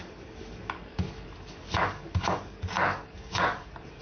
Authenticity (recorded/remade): remade